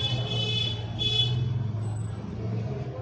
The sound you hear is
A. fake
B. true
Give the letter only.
B